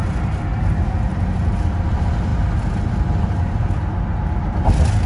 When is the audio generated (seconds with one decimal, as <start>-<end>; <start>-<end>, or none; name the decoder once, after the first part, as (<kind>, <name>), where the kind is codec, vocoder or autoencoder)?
none